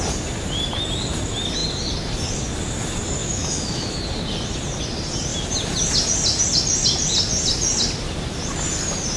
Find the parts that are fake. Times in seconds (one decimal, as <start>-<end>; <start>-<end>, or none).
3.2-4.0